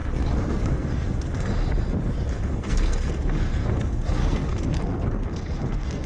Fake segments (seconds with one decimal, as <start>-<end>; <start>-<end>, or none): 0.0-1.6; 2.3-6.1